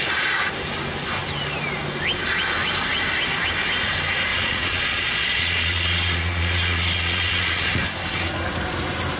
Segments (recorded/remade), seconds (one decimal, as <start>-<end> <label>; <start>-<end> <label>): 0.0-4.3 recorded; 4.3-7.8 remade; 7.8-9.2 recorded